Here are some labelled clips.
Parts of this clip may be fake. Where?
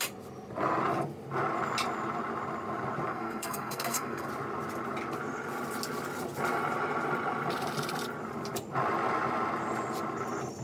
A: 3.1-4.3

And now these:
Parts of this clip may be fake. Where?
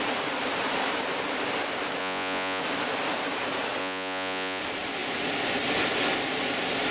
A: 2.0-2.6; 3.8-4.6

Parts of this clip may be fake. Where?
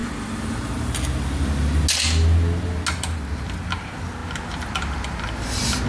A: none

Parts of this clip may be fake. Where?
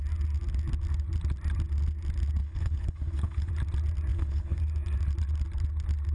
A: 2.4-3.5; 4.1-4.6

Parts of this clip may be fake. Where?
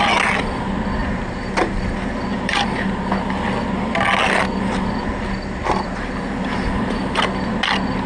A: 1.0-1.8; 2.3-2.9; 5.6-7.0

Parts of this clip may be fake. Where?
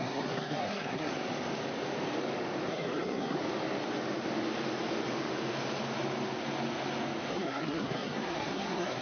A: 0.0-1.1; 2.7-3.4; 7.3-9.0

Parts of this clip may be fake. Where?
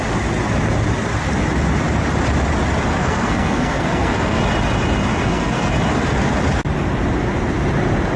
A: 3.0-4.4; 5.1-5.7